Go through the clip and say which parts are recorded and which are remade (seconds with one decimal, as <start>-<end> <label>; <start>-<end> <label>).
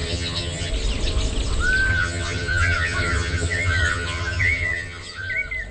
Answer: 0.0-0.7 remade; 0.7-1.9 recorded; 1.9-5.3 remade; 5.3-5.7 recorded